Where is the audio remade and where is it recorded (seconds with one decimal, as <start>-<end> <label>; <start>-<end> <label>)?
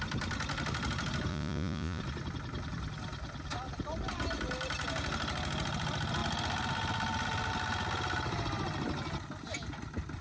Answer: 0.0-1.3 recorded; 1.3-2.0 remade; 2.0-10.2 recorded